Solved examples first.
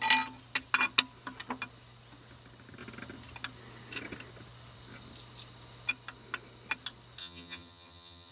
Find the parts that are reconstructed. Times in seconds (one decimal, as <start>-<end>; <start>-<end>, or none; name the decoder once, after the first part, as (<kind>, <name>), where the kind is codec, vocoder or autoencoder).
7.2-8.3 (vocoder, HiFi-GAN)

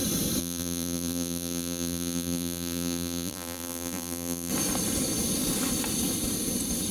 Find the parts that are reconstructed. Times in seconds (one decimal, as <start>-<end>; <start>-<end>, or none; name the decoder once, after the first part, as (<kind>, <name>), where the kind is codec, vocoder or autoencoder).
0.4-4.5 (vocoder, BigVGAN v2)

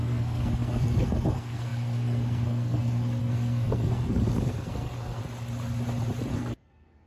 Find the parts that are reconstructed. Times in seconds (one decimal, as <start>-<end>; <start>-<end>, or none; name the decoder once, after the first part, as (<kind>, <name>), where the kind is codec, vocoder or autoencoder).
0.0-5.2 (codec, SNAC); 6.3-7.1

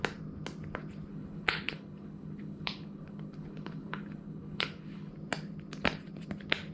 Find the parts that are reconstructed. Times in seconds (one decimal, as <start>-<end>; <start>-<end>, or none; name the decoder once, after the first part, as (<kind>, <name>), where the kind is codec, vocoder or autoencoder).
1.1-5.1 (codec, HILCodec)

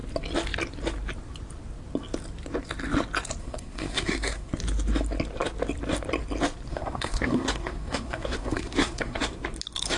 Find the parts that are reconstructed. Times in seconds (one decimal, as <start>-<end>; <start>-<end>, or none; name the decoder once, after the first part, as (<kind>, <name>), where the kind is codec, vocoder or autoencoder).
3.4-4.5 (codec, SNAC); 6.7-9.2